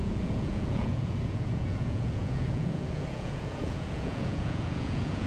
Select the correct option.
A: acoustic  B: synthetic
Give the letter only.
B